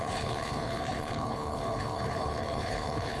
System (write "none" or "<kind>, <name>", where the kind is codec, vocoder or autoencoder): codec, HILCodec